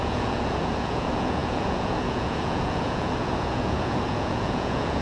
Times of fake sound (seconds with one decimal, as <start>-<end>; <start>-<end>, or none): 0.0-5.0